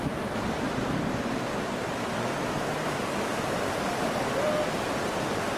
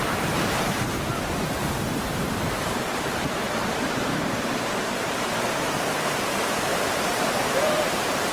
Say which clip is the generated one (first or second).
second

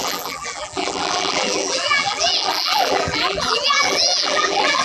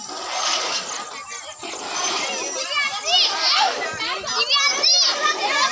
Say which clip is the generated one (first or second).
first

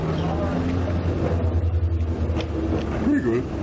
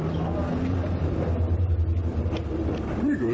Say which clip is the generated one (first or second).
second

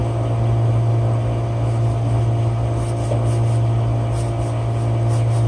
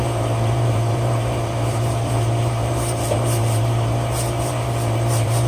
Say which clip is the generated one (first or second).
second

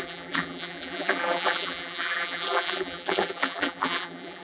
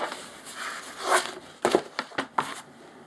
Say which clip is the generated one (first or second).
first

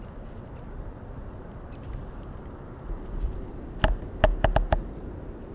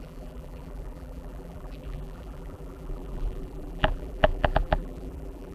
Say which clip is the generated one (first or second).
second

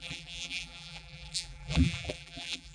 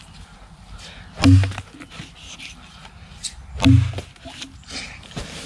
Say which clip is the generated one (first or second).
first